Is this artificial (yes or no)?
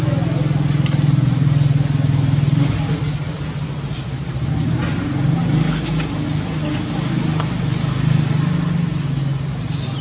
no